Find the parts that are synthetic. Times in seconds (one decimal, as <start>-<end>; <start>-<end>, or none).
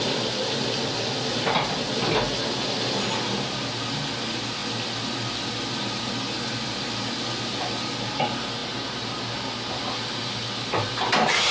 none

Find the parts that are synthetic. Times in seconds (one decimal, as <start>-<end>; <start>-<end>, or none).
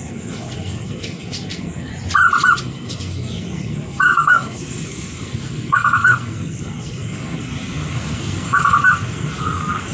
0.0-1.9; 2.6-9.9